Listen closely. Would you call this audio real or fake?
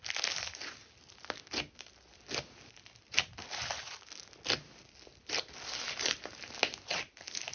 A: real